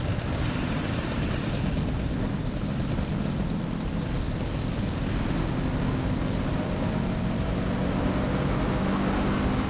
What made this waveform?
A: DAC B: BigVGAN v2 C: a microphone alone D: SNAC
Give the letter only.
C